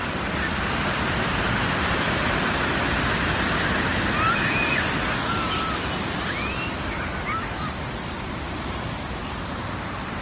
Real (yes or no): yes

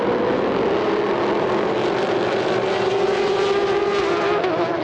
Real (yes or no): yes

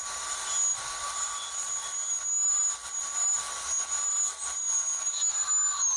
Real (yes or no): yes